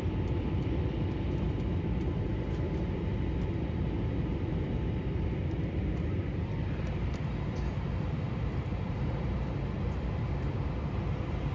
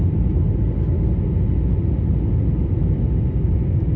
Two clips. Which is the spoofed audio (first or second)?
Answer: first